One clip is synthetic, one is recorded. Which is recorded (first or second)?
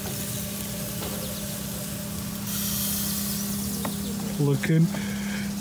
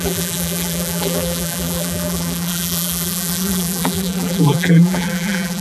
first